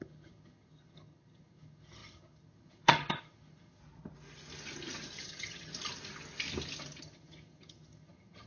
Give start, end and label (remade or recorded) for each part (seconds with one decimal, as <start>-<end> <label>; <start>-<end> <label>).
0.0-3.8 remade; 3.8-5.2 recorded; 5.2-5.7 remade; 5.7-7.0 recorded; 7.0-8.5 remade